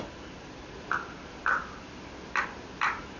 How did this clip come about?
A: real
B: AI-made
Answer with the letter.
A